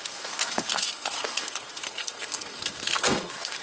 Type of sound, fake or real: fake